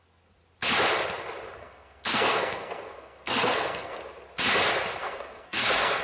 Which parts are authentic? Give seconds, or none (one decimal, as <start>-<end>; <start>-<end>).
0.0-1.6; 4.0-5.0